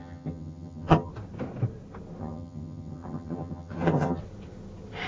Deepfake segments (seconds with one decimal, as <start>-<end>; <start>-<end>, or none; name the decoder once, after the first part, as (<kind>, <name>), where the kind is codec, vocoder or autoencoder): 0.0-1.1 (vocoder, HiFi-GAN); 2.2-4.2

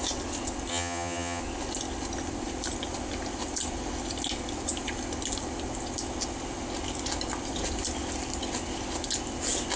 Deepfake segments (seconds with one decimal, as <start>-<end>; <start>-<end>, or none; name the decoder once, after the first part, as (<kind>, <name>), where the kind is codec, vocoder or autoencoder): 0.7-1.4 (vocoder, HiFi-GAN)

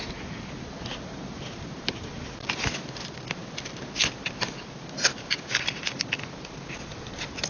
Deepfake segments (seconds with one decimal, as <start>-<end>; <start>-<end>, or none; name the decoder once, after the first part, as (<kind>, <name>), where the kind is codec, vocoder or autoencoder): none

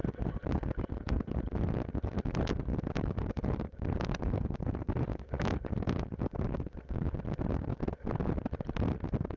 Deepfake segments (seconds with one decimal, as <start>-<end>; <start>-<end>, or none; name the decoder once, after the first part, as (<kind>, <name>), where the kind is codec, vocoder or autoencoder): none

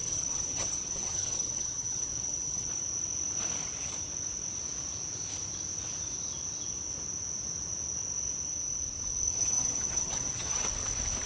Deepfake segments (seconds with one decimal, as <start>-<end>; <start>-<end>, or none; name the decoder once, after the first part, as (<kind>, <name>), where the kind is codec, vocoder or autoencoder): 0.0-2.7 (vocoder, HiFi-GAN); 9.3-10.7